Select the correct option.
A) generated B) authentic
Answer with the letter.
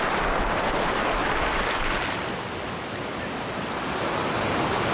B